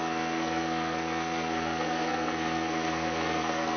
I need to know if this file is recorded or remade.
remade